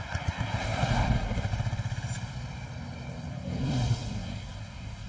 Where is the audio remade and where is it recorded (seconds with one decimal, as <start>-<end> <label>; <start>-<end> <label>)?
0.0-1.5 remade; 1.5-3.3 recorded; 3.3-5.1 remade